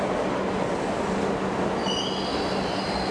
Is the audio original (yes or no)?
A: yes